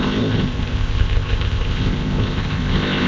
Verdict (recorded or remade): remade